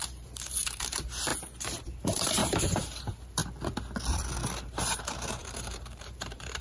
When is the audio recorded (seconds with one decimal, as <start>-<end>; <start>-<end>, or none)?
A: 1.3-2.0; 3.4-4.9